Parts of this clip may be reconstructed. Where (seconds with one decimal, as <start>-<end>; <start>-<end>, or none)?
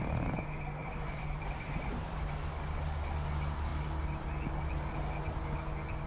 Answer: 0.8-2.2